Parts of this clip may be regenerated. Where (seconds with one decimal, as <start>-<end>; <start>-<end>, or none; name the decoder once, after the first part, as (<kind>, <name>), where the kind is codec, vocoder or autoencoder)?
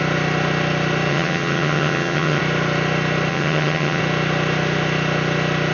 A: 1.1-2.4 (vocoder, HiFi-GAN); 3.3-4.0